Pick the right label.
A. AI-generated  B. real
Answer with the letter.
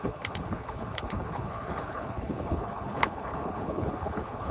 A